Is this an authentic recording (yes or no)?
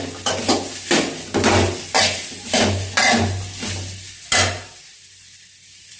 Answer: yes